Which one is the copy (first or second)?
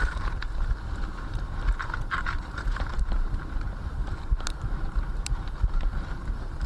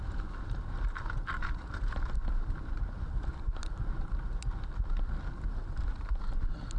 first